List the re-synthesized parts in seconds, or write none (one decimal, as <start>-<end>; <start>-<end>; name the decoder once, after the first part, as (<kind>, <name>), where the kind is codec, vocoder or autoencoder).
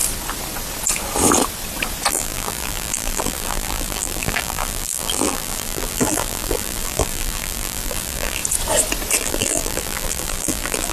2.1-8.4 (vocoder, BigVGAN v2); 9.2-10.9